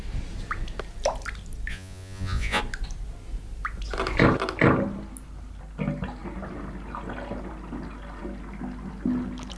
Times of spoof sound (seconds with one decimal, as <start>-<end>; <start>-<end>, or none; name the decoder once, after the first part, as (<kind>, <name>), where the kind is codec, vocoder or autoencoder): 1.7-2.6 (vocoder, Vocos)